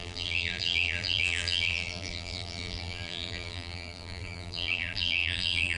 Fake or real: fake